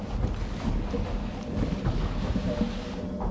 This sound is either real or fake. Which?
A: real